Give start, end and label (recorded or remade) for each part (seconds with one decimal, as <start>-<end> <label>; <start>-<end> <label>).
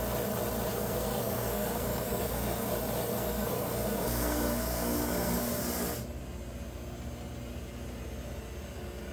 0.0-0.7 recorded; 0.7-2.7 remade; 2.7-3.1 recorded; 3.1-5.6 remade; 5.6-9.1 recorded